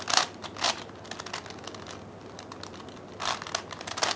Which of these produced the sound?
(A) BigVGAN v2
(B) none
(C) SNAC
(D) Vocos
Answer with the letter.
B